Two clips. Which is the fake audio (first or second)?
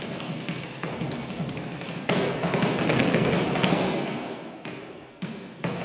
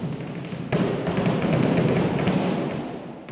first